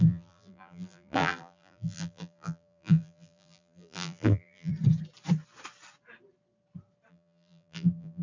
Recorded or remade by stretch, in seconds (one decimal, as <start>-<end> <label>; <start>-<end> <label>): 0.0-4.7 remade; 4.7-7.1 recorded; 7.1-8.2 remade